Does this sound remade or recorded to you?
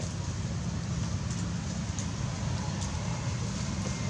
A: recorded